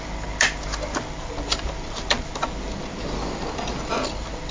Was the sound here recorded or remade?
recorded